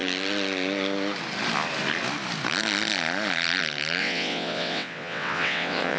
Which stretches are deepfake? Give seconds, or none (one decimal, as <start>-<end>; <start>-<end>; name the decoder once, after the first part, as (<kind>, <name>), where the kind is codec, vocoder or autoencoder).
4.0-6.0 (vocoder, WaveNeXt)